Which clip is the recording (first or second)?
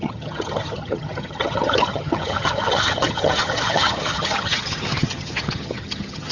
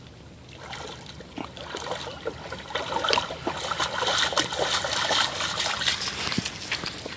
second